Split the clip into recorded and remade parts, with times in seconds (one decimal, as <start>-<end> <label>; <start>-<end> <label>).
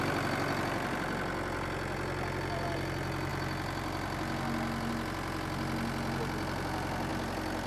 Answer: 0.0-7.7 recorded